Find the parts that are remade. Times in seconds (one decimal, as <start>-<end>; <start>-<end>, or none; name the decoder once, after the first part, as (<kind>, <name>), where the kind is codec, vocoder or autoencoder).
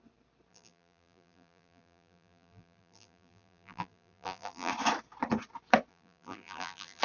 0.5-4.7 (vocoder, BigVGAN v2); 5.9-7.0